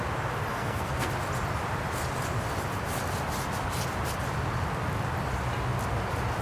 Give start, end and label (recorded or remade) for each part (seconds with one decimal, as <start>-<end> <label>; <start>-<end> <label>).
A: 0.0-0.5 recorded; 0.5-1.1 remade; 1.1-6.4 recorded